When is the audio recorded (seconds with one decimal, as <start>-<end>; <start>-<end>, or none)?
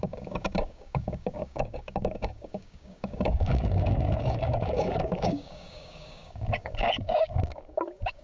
none